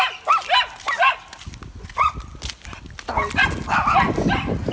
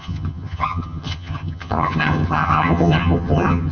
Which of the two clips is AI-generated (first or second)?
second